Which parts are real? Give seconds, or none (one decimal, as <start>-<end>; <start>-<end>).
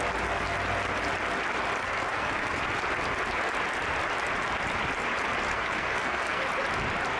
0.0-1.8; 2.6-5.5; 6.4-7.2